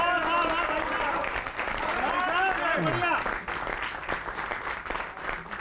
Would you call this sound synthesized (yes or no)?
no